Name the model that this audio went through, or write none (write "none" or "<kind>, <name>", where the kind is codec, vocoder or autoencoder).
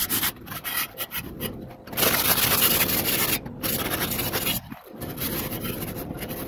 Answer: vocoder, BigVGAN v2